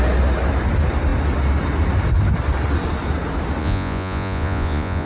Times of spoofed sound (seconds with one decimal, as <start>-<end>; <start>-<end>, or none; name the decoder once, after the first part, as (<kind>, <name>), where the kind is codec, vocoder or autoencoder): 3.6-5.1 (vocoder, Vocos)